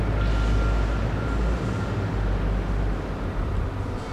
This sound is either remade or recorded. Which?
recorded